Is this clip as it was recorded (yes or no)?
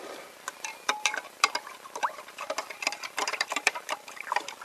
no